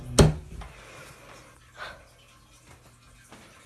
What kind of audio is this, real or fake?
real